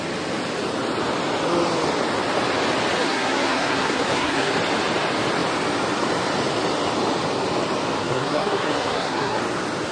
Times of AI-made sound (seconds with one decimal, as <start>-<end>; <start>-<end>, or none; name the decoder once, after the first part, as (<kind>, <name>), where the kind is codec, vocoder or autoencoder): 3.0-4.5 (codec, SNAC); 8.0-9.4

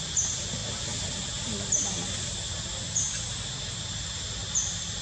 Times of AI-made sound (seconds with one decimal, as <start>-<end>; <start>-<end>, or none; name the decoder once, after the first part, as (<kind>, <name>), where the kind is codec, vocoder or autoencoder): none